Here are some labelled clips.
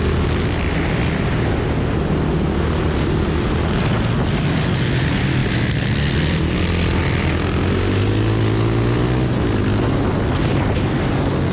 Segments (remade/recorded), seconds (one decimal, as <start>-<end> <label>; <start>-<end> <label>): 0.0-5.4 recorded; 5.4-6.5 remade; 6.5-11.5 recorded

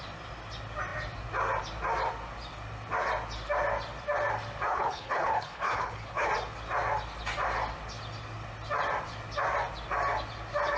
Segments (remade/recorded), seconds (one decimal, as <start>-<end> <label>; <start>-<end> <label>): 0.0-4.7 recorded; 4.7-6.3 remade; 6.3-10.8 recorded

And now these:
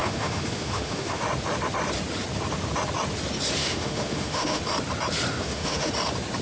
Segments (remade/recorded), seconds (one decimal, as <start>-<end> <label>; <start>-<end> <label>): 0.0-1.2 remade; 1.2-3.6 recorded; 3.6-4.6 remade; 4.6-5.3 recorded; 5.3-5.9 remade; 5.9-6.4 recorded